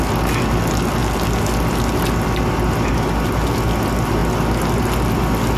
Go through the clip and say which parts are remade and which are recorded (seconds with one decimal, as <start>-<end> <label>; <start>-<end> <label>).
0.0-5.6 recorded